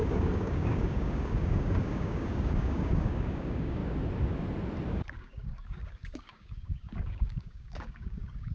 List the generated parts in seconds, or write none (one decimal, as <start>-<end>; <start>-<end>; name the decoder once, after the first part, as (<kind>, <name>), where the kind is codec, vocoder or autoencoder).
0.0-3.8 (codec, DAC); 4.9-8.5